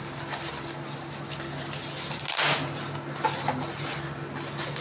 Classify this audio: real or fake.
real